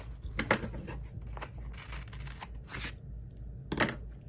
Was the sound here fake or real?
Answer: real